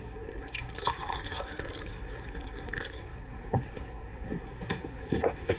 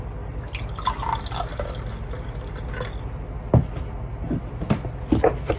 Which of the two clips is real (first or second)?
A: second